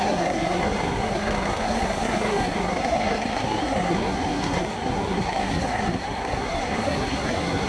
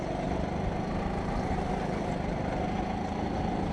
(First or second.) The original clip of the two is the second